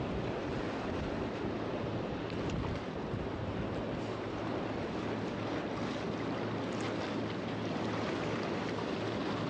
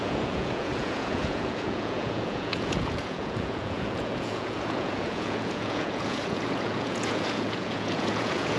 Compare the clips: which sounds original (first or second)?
first